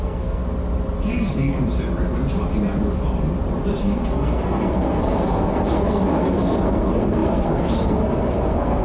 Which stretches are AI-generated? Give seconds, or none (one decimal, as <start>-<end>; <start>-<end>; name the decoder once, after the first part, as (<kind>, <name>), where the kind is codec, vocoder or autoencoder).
0.0-0.4 (codec, SNAC); 1.0-1.5; 3.8-8.8